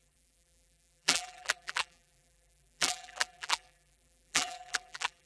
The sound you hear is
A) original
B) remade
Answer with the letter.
B